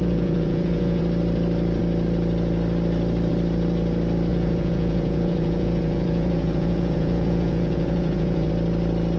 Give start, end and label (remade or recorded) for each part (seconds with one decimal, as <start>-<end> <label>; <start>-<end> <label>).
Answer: 0.0-1.0 remade; 1.0-4.3 recorded; 4.3-8.5 remade; 8.5-9.2 recorded